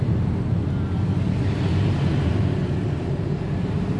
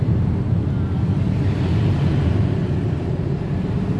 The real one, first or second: first